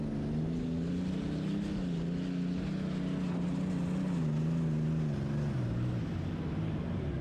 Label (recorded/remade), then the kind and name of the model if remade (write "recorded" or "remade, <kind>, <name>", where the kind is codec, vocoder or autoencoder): recorded